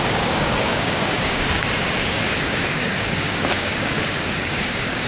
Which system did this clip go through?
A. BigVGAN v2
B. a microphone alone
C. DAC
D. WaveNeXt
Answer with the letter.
C